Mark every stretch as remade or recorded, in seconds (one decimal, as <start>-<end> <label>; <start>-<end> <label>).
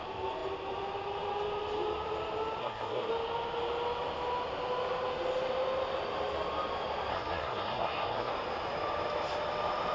0.0-2.6 recorded; 2.6-3.1 remade; 3.1-7.1 recorded; 7.1-8.3 remade; 8.3-9.9 recorded